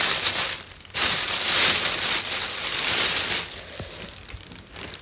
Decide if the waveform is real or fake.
real